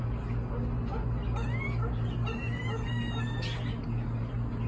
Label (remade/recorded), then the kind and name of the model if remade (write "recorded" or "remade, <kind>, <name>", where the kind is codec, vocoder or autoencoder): recorded